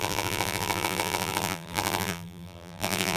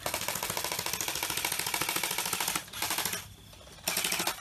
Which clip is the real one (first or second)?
second